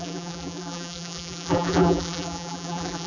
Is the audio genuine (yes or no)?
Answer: no